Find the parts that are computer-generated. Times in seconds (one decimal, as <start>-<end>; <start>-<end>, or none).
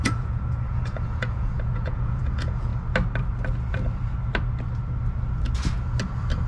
0.0-2.7